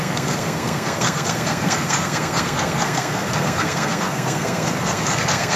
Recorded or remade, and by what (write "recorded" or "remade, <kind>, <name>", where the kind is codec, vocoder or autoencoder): remade, codec, SNAC